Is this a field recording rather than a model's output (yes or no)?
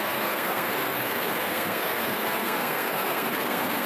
no